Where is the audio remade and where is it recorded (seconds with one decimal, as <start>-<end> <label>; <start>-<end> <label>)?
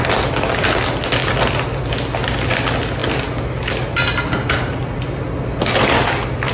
0.0-6.5 recorded